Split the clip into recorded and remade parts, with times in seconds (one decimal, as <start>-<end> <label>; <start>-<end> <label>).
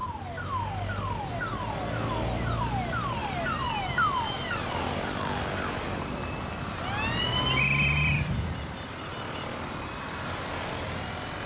0.0-11.5 recorded